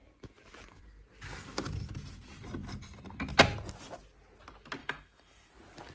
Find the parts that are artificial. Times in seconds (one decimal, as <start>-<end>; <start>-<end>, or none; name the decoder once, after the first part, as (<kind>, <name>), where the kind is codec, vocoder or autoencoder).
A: 4.8-5.5 (autoencoder, DAC-VAE)